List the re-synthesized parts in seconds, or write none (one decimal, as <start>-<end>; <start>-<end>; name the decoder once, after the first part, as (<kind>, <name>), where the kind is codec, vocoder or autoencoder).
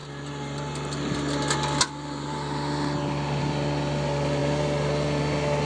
none